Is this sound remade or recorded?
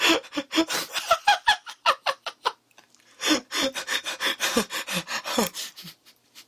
recorded